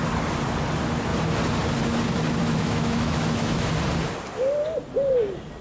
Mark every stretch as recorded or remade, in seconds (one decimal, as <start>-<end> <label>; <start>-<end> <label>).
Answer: 0.0-2.4 recorded; 2.4-3.7 remade; 3.7-5.6 recorded